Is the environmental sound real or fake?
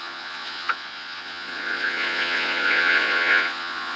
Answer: fake